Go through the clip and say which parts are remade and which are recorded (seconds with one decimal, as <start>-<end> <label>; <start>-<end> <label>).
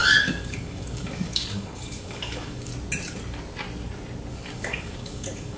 0.0-2.7 remade; 2.7-4.3 recorded; 4.3-5.6 remade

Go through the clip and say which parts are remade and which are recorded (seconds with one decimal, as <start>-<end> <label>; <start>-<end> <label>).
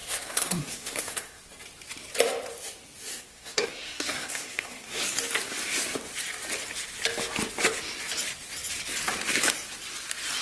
0.0-1.4 remade; 1.4-3.1 recorded; 3.1-5.0 remade; 5.0-10.4 recorded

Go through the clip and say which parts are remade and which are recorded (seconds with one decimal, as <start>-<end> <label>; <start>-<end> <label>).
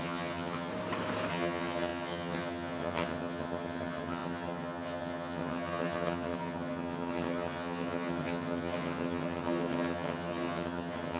0.0-0.7 remade; 0.7-1.3 recorded; 1.3-11.2 remade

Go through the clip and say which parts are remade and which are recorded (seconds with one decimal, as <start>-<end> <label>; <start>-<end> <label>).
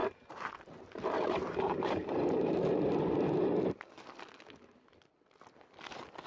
0.0-3.8 remade; 3.8-6.3 recorded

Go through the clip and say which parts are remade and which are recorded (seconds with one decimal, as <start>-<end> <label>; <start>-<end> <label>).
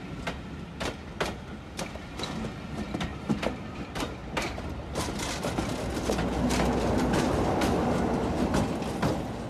0.0-3.1 recorded; 3.1-3.8 remade; 3.8-4.2 recorded; 4.2-5.3 remade; 5.3-9.5 recorded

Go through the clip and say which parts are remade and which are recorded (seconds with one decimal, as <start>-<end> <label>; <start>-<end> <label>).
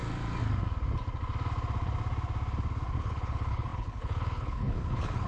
0.0-3.0 recorded; 3.0-5.3 remade